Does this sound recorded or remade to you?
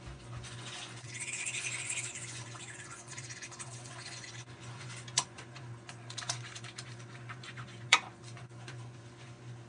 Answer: remade